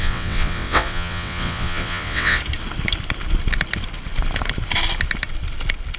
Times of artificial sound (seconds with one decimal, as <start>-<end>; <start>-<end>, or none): 0.0-2.4